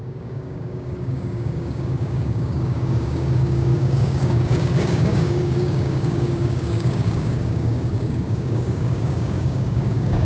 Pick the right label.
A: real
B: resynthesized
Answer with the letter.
B